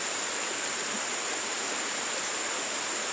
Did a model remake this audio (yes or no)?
no